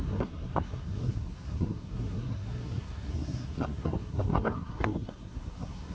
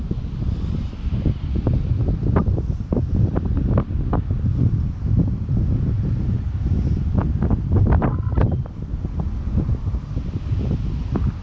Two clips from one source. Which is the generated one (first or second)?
first